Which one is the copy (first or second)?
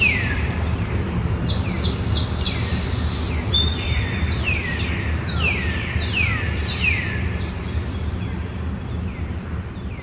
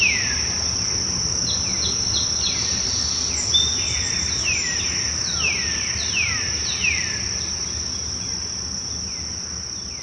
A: first